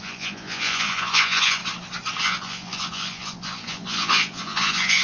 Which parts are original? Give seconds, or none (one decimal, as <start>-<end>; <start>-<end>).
1.6-2.2